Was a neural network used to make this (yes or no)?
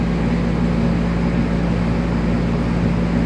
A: no